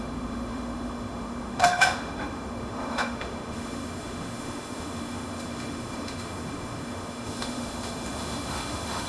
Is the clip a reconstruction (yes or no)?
yes